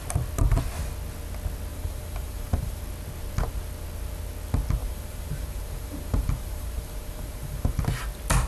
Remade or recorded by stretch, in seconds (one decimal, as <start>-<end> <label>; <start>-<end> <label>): 0.0-1.7 recorded; 1.7-2.8 remade; 2.8-4.8 recorded; 4.8-7.8 remade; 7.8-8.5 recorded